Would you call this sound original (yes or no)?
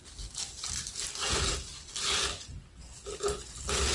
yes